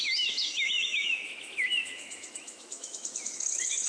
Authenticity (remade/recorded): remade